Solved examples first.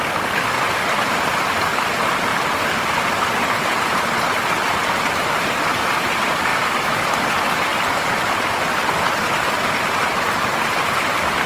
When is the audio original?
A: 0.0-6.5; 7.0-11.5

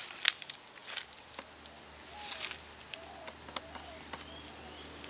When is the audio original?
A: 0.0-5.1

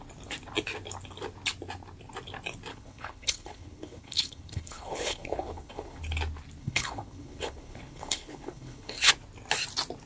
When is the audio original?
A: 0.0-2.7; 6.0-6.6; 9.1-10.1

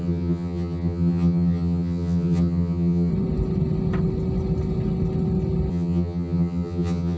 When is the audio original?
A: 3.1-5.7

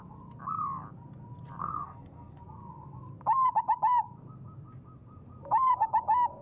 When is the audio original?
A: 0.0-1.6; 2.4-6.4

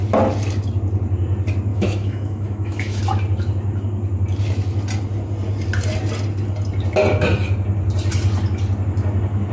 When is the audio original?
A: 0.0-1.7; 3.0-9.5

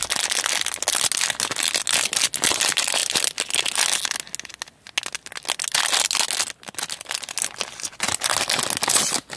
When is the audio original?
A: 0.0-9.4

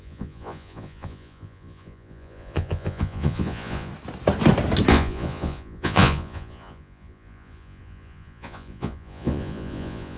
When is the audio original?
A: 3.9-4.9